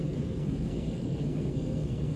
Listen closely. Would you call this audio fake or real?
fake